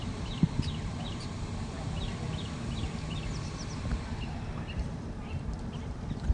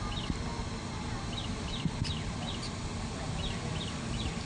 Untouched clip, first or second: second